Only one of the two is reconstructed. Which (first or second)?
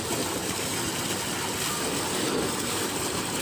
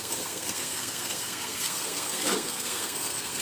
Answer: second